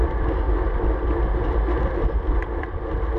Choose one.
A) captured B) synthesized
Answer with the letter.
A